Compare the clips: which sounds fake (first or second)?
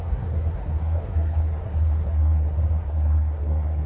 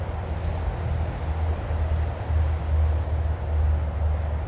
first